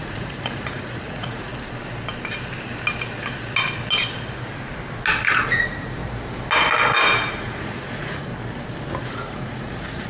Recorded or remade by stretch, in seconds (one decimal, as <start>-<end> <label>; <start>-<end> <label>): 0.0-1.5 remade; 1.5-5.2 recorded; 5.2-6.0 remade; 6.0-7.3 recorded; 7.3-8.3 remade; 8.3-9.0 recorded; 9.0-10.1 remade